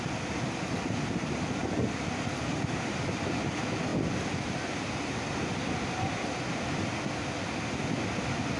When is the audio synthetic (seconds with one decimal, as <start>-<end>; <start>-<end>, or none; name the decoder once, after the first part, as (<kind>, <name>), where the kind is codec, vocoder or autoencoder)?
none